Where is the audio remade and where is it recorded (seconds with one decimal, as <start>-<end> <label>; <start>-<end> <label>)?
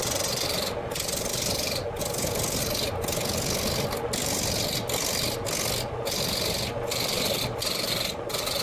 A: 0.0-8.6 recorded